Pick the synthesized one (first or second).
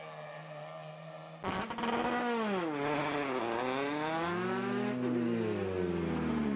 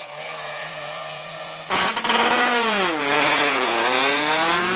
second